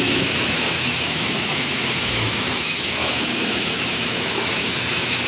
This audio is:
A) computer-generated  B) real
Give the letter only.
A